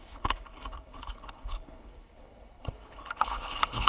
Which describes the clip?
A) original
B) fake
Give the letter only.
B